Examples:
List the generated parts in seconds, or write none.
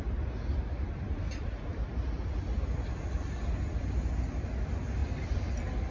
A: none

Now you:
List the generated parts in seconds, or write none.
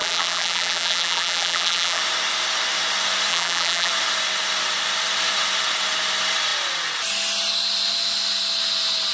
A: 0.0-2.0 (vocoder, BigVGAN v2); 3.3-3.9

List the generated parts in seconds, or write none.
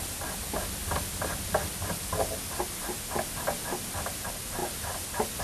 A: none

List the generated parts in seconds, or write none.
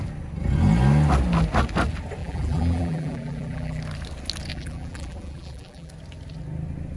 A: 2.2-3.8 (vocoder, BigVGAN v2); 4.5-5.9